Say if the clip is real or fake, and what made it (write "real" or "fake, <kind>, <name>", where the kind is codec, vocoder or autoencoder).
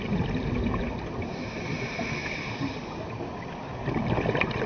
real